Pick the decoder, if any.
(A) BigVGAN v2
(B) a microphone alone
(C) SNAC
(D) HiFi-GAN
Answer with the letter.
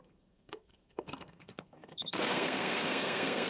C